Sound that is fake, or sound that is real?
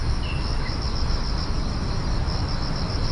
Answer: real